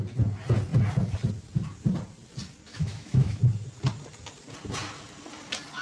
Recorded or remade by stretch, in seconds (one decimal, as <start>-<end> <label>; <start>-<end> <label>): 0.0-2.7 recorded; 2.7-3.4 remade; 3.4-5.8 recorded